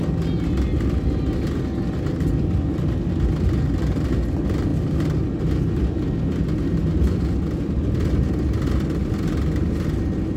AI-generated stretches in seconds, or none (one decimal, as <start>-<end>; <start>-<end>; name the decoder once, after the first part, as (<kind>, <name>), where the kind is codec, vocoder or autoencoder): none